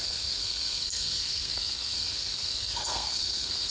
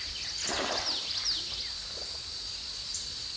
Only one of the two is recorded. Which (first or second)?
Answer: second